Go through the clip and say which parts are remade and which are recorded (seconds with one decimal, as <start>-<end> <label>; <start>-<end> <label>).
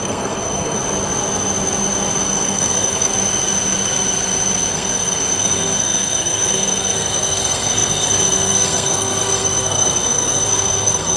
0.0-0.8 remade; 0.8-2.2 recorded; 2.2-3.1 remade; 3.1-4.7 recorded; 4.7-11.2 remade